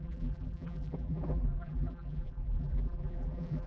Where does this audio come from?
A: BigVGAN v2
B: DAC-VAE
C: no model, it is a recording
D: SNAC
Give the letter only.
A